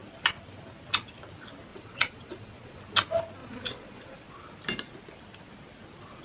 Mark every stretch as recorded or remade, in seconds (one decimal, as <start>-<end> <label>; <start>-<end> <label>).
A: 0.0-1.7 recorded; 1.7-2.8 remade; 2.8-3.4 recorded; 3.4-4.3 remade; 4.3-6.2 recorded